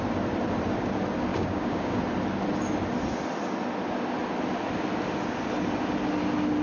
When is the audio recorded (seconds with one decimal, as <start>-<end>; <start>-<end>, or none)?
0.0-1.3; 2.0-6.6